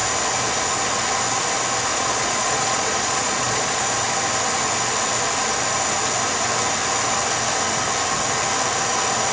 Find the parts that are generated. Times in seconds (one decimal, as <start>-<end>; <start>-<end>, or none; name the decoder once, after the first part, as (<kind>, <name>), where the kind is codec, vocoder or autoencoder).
1.9-3.8 (vocoder, Vocos)